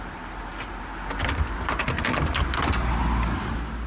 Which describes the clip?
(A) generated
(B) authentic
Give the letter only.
B